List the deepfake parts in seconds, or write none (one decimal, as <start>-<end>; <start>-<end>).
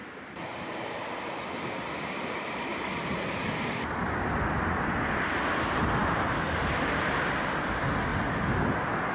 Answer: none